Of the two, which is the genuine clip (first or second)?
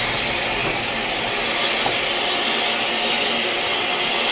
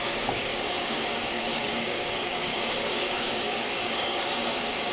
first